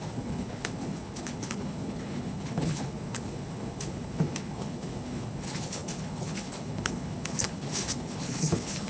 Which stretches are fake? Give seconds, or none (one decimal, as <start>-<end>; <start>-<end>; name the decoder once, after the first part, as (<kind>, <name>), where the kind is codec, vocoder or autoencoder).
0.0-8.9 (codec, HILCodec)